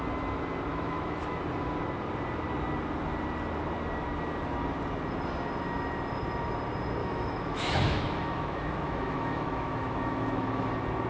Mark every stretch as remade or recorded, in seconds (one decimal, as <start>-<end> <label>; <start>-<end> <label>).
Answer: 0.0-0.7 recorded; 0.7-1.4 remade; 1.4-7.0 recorded; 7.0-10.7 remade; 10.7-11.1 recorded